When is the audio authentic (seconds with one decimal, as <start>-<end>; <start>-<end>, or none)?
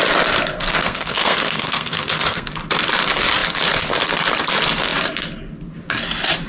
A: 0.0-0.5; 2.5-6.5